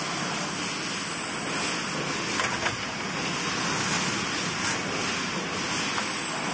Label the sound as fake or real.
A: real